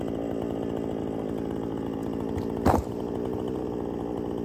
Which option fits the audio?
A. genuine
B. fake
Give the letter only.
A